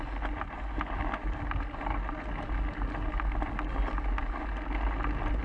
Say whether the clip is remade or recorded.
recorded